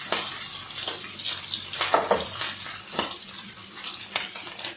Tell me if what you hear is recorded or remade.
recorded